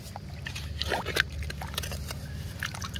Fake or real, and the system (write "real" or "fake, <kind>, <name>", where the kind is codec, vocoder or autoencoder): real